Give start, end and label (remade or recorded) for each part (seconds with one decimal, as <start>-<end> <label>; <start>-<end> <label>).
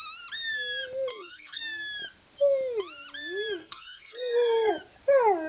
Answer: 0.0-1.1 recorded; 1.1-1.6 remade; 1.6-3.6 recorded; 3.6-4.7 remade; 4.7-5.5 recorded